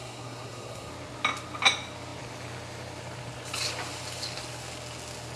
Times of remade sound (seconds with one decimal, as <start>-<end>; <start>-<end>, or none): 0.0-0.9